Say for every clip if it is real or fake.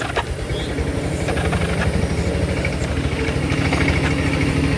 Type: real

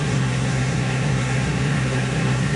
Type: fake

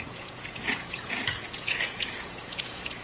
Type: fake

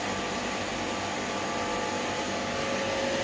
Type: real